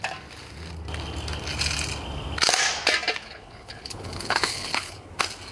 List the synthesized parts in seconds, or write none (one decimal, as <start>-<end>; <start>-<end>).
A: 3.2-5.1